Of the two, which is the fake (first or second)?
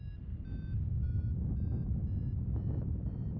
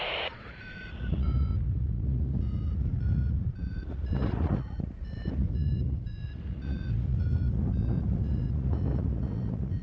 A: second